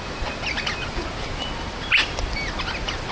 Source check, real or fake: real